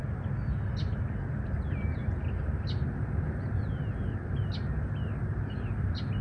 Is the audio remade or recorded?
recorded